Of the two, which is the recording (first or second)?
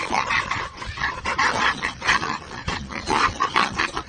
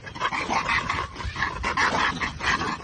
second